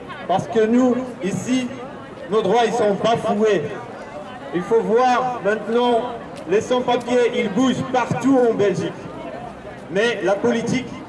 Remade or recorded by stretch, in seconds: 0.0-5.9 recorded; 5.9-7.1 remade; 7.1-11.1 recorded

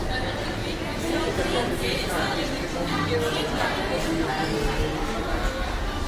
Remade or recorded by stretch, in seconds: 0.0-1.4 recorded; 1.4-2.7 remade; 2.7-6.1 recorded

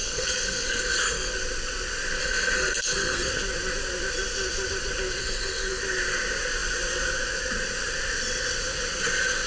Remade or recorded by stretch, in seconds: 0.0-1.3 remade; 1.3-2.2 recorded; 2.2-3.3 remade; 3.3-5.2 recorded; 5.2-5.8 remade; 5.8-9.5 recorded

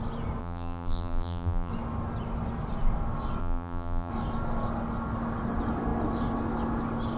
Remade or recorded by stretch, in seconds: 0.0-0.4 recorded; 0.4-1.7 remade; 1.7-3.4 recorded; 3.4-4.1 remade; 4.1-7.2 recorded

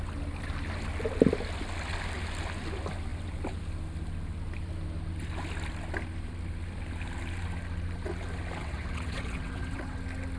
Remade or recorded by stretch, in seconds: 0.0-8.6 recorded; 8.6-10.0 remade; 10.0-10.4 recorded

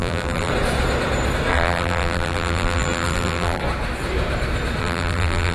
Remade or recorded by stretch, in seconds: 0.0-0.5 remade; 0.5-1.5 recorded; 1.5-3.6 remade; 3.6-4.8 recorded; 4.8-5.5 remade